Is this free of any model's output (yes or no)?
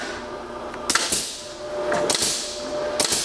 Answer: yes